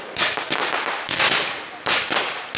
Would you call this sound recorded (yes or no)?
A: yes